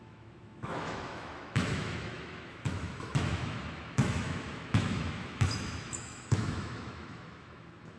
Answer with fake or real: fake